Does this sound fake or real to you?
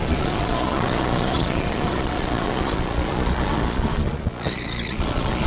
fake